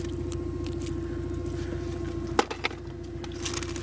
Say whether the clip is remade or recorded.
recorded